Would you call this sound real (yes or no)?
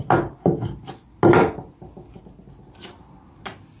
yes